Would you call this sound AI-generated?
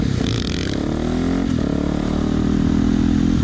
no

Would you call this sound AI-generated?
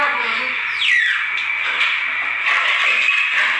no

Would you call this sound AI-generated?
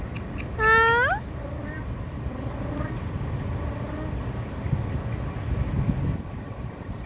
no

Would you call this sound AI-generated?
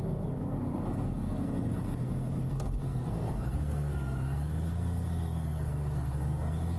yes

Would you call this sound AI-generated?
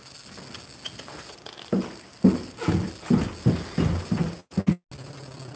no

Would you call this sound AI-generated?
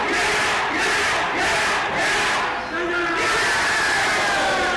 no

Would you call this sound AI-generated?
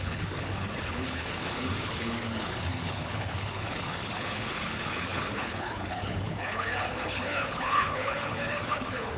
yes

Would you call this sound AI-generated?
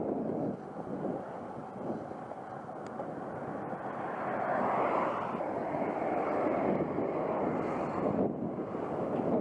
no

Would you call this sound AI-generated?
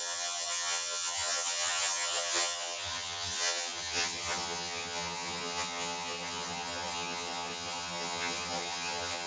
yes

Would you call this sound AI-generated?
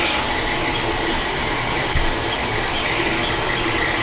yes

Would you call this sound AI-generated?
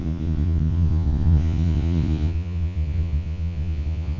yes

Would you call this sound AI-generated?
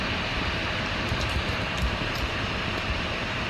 yes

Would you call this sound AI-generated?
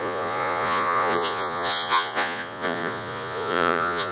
yes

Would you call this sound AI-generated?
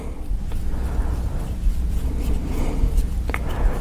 no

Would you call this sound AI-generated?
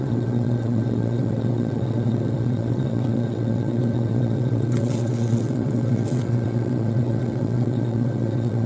yes